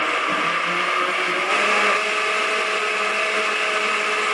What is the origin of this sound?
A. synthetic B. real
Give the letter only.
B